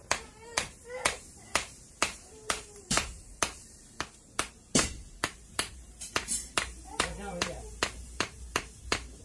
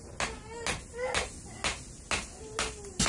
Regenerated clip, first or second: first